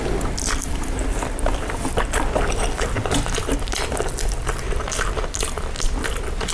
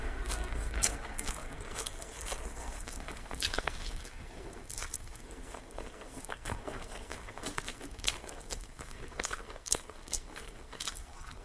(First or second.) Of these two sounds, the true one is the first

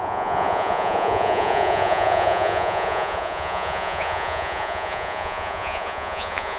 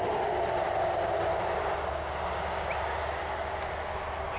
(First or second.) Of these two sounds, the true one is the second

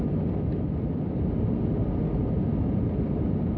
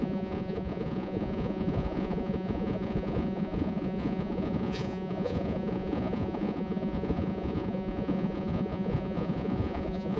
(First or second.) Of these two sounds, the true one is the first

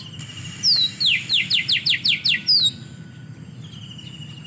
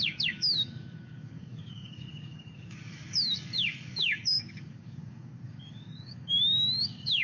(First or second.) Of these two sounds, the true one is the first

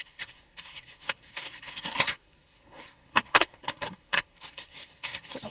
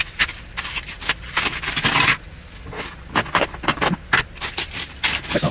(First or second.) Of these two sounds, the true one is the second